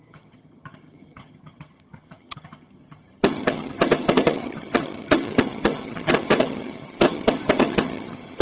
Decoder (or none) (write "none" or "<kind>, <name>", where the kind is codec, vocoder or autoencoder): vocoder, HiFi-GAN